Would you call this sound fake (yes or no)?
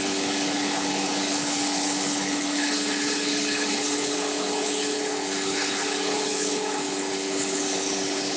yes